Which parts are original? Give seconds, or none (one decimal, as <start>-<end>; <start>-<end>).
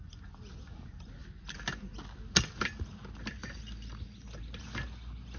0.0-5.4